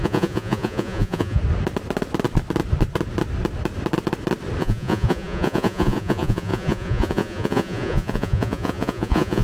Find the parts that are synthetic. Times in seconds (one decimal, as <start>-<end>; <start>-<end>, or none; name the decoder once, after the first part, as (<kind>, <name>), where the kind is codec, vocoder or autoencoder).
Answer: 0.0-1.4 (vocoder, Vocos); 4.6-9.4